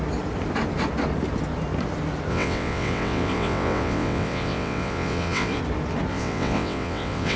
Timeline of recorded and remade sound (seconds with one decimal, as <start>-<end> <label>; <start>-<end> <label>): 0.0-2.3 recorded; 2.3-5.6 remade; 5.6-6.1 recorded; 6.1-7.4 remade